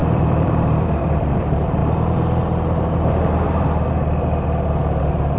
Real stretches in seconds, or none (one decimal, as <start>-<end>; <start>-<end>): 1.8-5.0